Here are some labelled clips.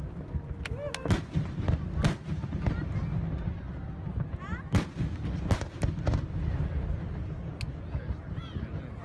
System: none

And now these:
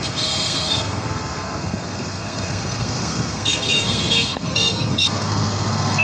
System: codec, SNAC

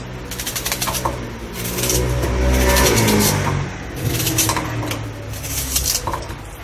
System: none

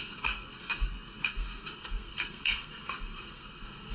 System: codec, SNAC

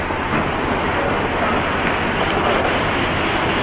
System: none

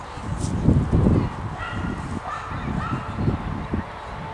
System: none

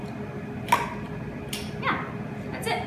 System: none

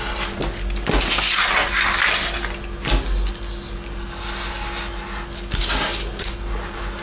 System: none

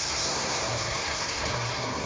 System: codec, SNAC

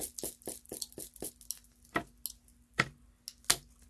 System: none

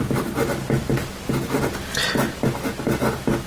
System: none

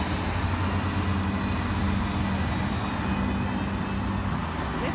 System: none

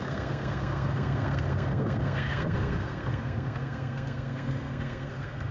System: codec, SNAC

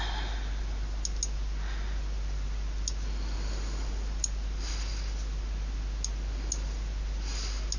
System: none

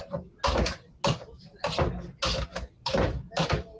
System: none